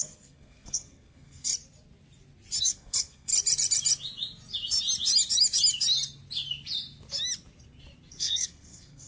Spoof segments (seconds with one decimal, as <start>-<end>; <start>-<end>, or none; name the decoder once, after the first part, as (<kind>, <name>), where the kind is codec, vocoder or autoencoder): 0.0-1.5 (codec, SNAC); 2.6-3.3; 8.1-9.1